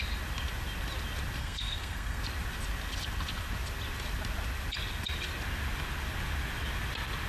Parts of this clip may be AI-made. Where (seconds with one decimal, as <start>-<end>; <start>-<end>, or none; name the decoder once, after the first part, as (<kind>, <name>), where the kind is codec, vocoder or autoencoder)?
1.4-2.2 (codec, SNAC)